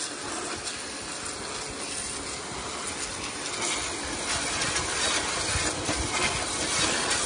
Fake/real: real